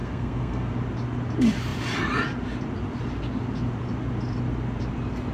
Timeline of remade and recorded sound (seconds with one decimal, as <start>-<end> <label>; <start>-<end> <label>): 0.0-0.7 remade; 0.7-5.3 recorded